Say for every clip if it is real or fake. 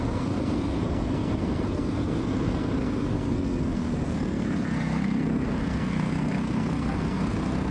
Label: fake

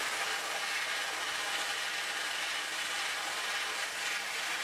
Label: real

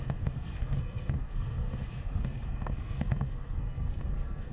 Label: fake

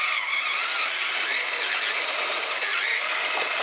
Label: real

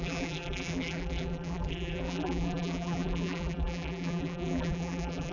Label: fake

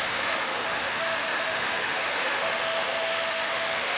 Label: fake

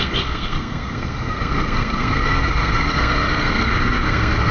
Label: fake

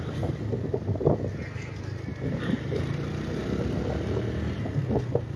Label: real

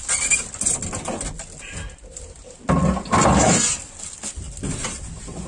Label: real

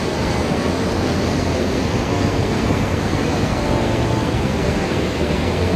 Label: fake